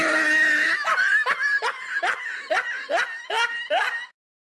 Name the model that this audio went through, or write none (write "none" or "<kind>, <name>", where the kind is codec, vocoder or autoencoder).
none